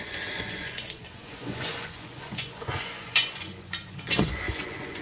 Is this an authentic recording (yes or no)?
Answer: no